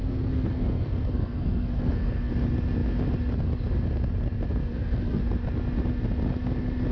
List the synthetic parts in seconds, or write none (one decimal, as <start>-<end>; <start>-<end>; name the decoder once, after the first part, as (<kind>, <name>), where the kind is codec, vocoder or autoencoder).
0.0-2.3 (codec, SNAC); 4.6-5.2